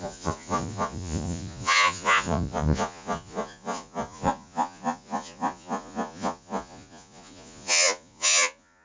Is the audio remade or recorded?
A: remade